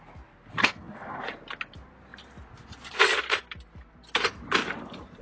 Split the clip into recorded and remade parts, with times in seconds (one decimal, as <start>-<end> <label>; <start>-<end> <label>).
0.0-0.6 recorded; 0.6-1.2 remade; 1.2-5.2 recorded